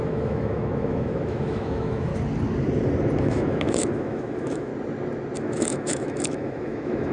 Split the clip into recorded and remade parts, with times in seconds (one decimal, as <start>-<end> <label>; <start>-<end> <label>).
0.0-2.1 remade; 2.1-3.2 recorded; 3.2-4.7 remade; 4.7-5.4 recorded; 5.4-7.1 remade